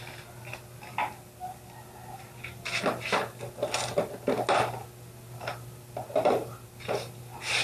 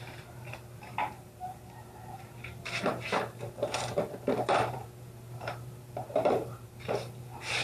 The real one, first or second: first